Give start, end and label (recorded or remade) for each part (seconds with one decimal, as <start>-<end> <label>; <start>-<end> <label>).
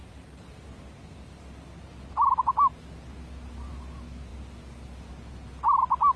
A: 0.0-6.2 recorded